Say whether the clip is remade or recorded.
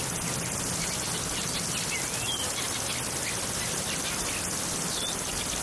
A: recorded